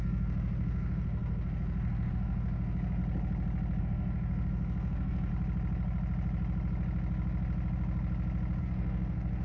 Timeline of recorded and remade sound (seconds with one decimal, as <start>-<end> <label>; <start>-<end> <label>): 0.0-3.0 remade; 3.0-3.8 recorded; 3.8-5.3 remade; 5.3-8.6 recorded; 8.6-9.4 remade

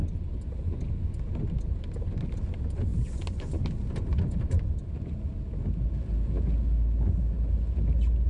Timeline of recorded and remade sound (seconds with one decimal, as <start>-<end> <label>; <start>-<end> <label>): 0.0-8.3 recorded

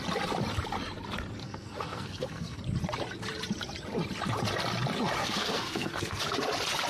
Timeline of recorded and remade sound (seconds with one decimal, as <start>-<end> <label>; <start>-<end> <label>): 0.0-1.4 recorded; 1.4-2.6 remade; 2.6-5.2 recorded; 5.2-6.2 remade; 6.2-6.9 recorded

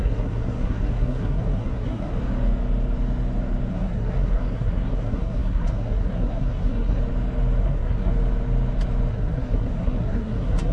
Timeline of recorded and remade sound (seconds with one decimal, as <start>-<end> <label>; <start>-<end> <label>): 0.0-2.1 remade; 2.1-3.7 recorded; 3.7-7.0 remade; 7.0-7.6 recorded; 7.6-8.1 remade; 8.1-9.1 recorded; 9.1-10.7 remade

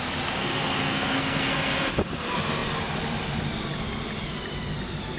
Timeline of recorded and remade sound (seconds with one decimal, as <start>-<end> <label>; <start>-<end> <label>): 0.0-0.4 recorded; 0.4-1.9 remade; 1.9-5.2 recorded

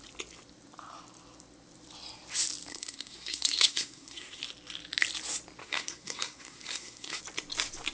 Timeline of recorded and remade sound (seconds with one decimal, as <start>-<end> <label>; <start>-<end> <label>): 0.0-2.7 recorded; 2.7-4.4 remade; 4.4-5.6 recorded; 5.6-7.2 remade; 7.2-7.9 recorded

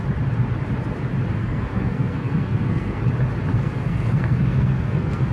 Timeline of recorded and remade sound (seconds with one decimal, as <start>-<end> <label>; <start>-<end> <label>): 0.0-1.4 recorded; 1.4-3.0 remade; 3.0-3.5 recorded; 3.5-5.3 remade